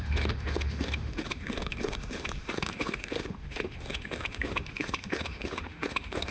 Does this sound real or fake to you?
fake